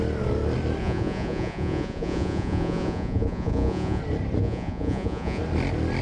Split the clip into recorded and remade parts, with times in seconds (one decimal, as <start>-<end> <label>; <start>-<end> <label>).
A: 0.0-0.8 recorded; 0.8-4.0 remade; 4.0-4.4 recorded; 4.4-5.4 remade; 5.4-6.0 recorded